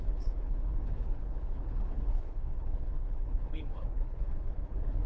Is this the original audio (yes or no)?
no